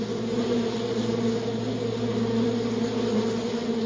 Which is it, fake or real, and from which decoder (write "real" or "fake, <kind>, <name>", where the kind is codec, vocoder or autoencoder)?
real